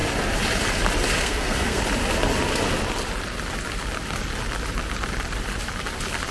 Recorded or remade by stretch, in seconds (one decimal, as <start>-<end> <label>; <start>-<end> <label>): 0.0-1.2 recorded; 1.2-1.8 remade; 1.8-6.3 recorded